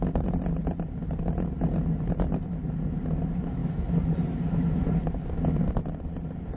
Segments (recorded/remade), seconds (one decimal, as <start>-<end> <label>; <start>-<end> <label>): 0.0-6.6 recorded